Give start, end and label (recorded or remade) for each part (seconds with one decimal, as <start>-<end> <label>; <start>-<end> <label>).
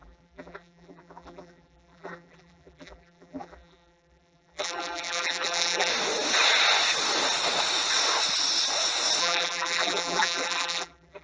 0.0-5.9 remade; 5.9-9.2 recorded; 9.2-11.2 remade